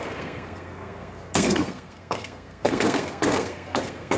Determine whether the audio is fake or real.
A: fake